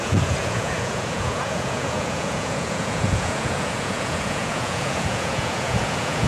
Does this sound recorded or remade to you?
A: remade